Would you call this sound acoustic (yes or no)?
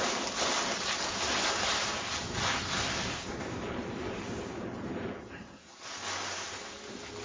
yes